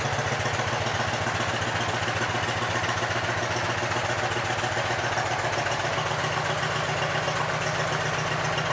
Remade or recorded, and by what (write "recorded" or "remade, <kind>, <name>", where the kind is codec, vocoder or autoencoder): recorded